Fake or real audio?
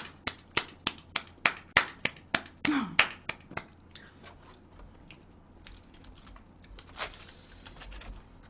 real